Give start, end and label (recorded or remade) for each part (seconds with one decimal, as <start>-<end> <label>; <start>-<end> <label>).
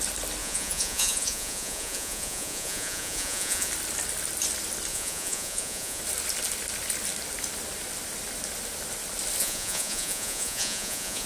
0.0-0.4 recorded; 0.4-3.7 remade; 3.7-4.9 recorded; 4.9-6.0 remade; 6.0-9.4 recorded; 9.4-11.3 remade